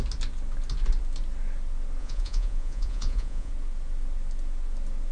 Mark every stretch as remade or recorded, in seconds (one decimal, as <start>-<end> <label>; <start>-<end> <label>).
0.0-2.0 recorded; 2.0-3.5 remade; 3.5-5.1 recorded